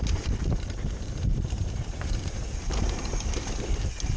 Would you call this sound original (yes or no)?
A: no